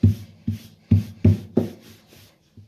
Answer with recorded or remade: recorded